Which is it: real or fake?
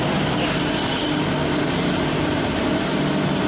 real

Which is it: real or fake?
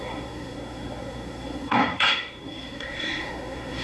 fake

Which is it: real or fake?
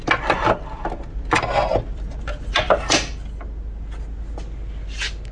real